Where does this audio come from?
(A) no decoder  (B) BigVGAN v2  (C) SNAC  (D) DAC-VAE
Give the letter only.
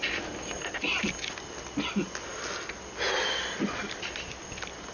A